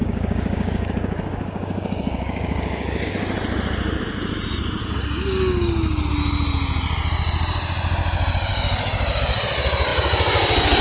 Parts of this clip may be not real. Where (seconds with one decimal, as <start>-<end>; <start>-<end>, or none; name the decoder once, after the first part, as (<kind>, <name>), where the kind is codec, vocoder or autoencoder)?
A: 0.0-3.1 (codec, DAC); 4.8-6.1; 8.5-9.2